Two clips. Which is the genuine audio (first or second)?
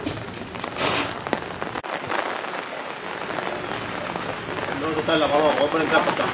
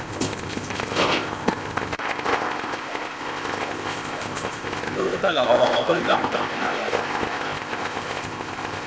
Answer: first